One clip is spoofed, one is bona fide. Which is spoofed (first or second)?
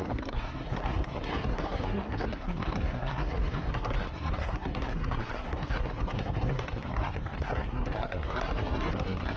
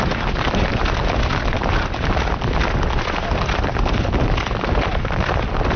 first